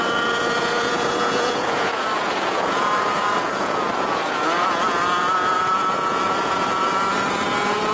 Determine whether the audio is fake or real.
fake